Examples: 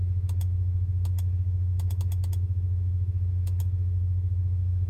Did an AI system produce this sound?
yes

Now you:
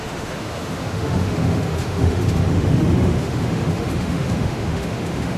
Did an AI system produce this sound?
yes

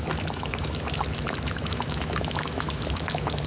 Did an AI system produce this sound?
yes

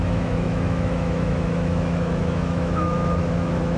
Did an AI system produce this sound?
yes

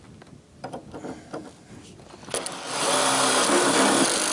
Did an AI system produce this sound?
no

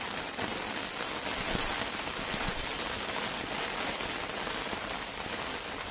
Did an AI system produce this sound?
no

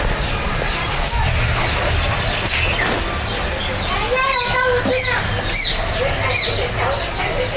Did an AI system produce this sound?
no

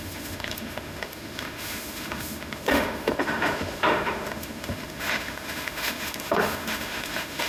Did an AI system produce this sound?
yes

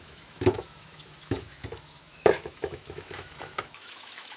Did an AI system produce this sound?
yes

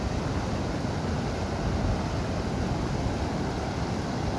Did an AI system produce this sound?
no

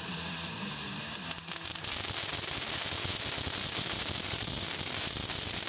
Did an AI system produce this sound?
no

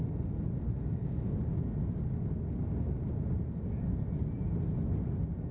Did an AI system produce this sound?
no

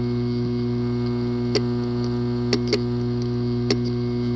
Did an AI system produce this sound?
no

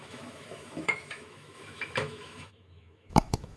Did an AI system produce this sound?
yes